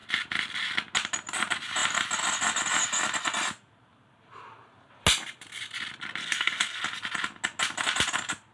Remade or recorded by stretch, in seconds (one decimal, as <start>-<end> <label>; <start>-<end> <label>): 0.0-6.2 recorded; 6.2-6.8 remade; 6.8-8.5 recorded